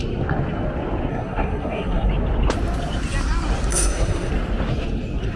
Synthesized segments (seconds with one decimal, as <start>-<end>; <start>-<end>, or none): 1.1-2.1; 3.7-4.3